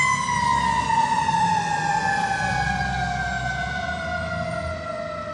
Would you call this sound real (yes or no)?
yes